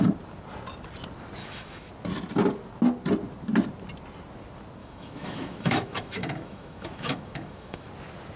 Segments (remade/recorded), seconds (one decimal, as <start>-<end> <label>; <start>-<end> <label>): 0.0-1.4 recorded; 1.4-1.9 remade; 1.9-4.8 recorded; 4.8-7.9 remade; 7.9-8.4 recorded